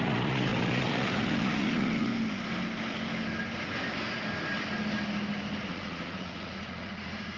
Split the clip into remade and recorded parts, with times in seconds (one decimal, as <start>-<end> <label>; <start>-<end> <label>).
0.0-2.1 remade; 2.1-5.6 recorded; 5.6-7.4 remade